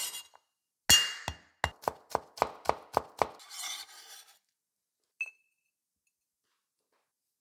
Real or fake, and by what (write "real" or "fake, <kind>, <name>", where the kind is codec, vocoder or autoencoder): real